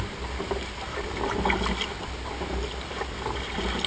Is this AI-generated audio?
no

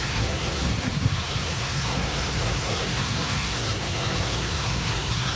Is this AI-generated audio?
yes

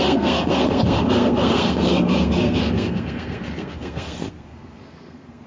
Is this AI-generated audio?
yes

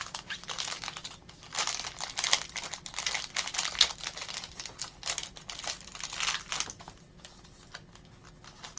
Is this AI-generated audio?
no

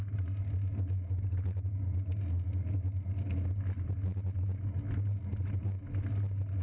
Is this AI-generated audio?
no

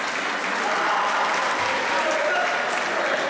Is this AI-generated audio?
no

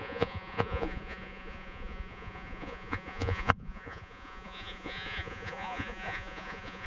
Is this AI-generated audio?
yes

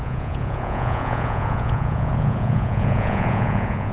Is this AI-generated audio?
yes